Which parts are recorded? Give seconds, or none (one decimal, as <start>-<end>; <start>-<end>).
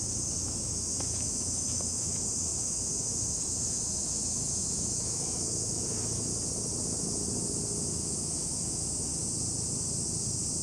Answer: 6.3-7.9; 9.1-10.6